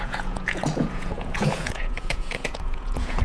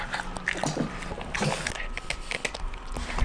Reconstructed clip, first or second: first